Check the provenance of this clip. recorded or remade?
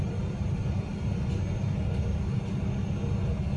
recorded